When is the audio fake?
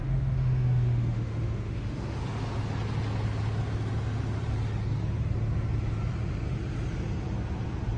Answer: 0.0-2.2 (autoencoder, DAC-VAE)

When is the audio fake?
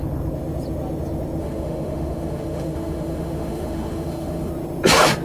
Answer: 1.4-4.5 (autoencoder, DAC-VAE)